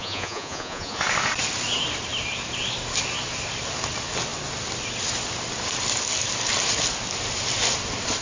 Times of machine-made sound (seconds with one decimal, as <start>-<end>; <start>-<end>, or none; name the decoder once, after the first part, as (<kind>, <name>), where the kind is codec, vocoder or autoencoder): 0.0-1.0 (vocoder, Vocos)